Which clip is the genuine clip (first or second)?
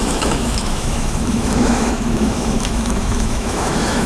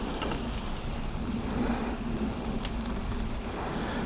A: second